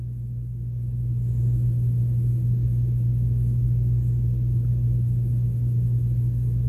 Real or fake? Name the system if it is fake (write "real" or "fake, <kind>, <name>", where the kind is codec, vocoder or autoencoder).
real